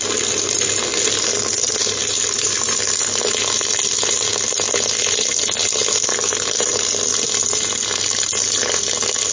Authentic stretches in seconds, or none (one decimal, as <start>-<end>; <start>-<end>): 0.0-9.3